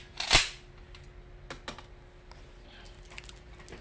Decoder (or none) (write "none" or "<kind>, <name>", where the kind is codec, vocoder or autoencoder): none